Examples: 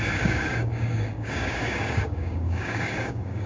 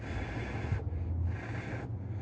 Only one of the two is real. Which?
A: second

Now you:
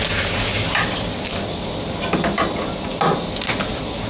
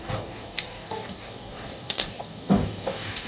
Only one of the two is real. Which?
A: first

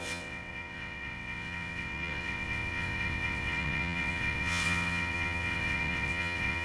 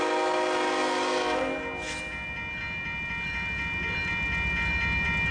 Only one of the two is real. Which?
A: second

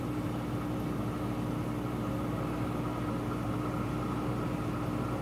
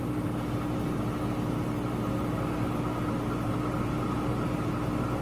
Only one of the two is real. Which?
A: first